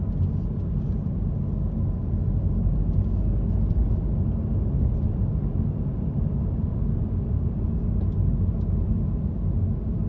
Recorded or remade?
recorded